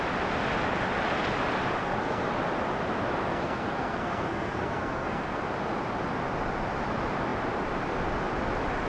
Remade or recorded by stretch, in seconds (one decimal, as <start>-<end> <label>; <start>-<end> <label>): 0.0-1.8 recorded; 1.8-2.3 remade; 2.3-3.2 recorded; 3.2-5.4 remade; 5.4-8.9 recorded